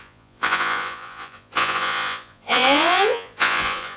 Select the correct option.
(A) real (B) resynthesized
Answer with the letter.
B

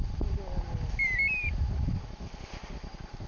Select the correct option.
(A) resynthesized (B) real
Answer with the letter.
B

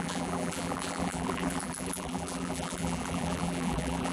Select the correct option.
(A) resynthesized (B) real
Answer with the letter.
A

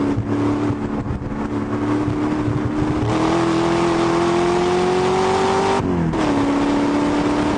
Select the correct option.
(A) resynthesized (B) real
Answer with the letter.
B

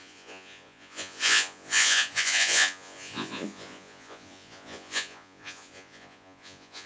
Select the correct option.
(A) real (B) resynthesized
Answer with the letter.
B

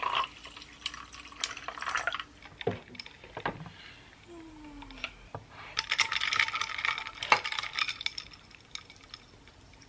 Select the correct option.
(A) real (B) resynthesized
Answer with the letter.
A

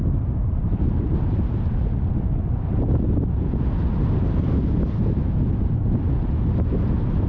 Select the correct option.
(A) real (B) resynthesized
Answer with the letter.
A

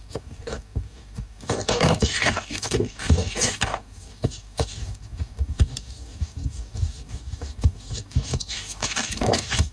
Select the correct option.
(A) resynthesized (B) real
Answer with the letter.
A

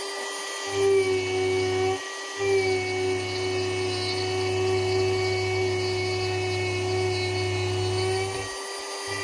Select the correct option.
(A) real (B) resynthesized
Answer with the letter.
A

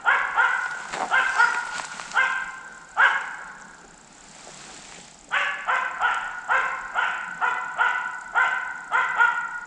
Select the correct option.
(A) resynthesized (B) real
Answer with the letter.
B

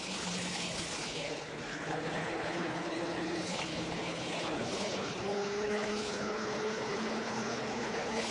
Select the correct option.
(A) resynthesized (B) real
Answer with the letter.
A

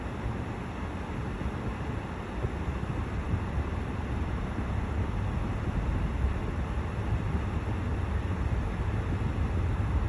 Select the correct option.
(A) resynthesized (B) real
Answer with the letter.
B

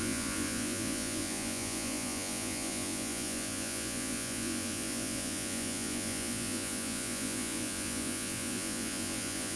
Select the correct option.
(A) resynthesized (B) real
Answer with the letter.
A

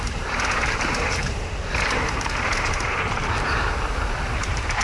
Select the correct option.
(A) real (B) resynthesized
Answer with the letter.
B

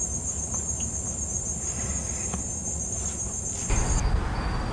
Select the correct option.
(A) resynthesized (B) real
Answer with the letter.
B